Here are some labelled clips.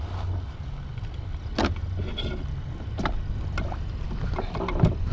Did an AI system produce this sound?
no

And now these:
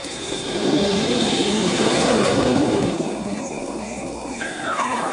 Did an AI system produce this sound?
yes